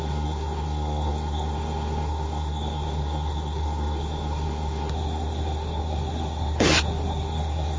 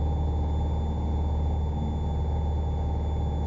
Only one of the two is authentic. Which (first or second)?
second